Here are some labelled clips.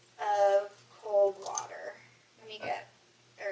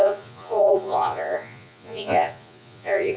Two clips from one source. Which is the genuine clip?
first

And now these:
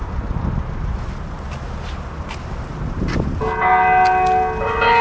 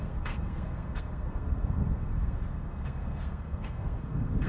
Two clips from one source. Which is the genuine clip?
first